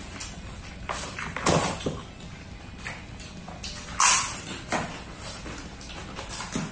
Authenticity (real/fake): real